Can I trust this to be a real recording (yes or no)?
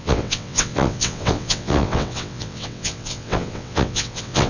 no